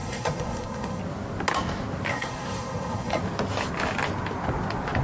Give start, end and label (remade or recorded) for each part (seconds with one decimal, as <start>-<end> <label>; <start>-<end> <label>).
0.0-1.0 remade; 1.0-2.1 recorded; 2.1-3.2 remade; 3.2-5.0 recorded